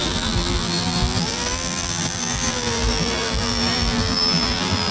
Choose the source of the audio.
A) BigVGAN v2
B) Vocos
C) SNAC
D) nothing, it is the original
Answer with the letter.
A